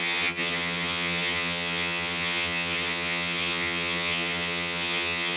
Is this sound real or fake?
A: fake